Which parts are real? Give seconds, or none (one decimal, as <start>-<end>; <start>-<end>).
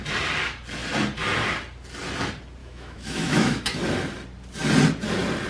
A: 0.0-2.6; 3.8-5.5